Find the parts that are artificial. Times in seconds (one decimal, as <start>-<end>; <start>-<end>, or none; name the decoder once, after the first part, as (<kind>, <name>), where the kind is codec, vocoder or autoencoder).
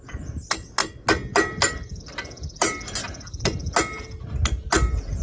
none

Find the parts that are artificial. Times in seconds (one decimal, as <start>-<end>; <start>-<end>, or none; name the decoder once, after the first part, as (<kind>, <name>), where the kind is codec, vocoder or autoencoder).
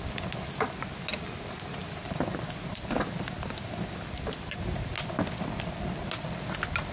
1.8-4.1 (vocoder, BigVGAN v2)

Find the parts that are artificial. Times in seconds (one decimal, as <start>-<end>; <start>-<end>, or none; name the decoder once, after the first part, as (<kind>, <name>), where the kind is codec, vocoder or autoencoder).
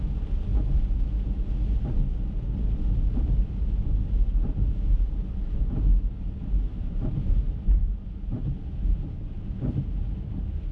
none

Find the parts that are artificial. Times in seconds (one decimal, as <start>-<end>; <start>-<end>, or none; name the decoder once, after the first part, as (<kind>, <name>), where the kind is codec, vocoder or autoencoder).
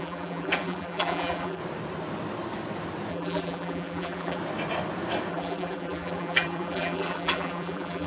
0.0-1.6 (vocoder, BigVGAN v2); 3.1-4.4; 5.3-8.1